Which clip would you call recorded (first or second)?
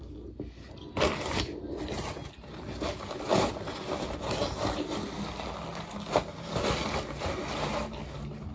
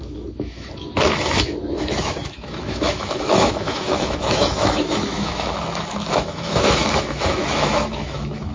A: first